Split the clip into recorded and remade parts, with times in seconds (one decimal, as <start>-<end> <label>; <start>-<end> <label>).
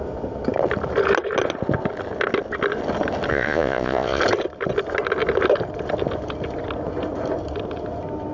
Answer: 0.0-3.3 recorded; 3.3-4.2 remade; 4.2-8.3 recorded